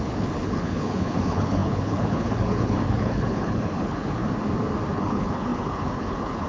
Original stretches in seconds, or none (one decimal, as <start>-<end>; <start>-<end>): 4.2-4.9